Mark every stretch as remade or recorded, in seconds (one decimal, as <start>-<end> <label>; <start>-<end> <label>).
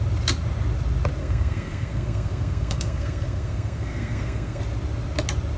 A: 0.0-1.2 recorded; 1.2-4.6 remade; 4.6-5.6 recorded